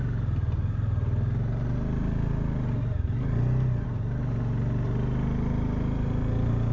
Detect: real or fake real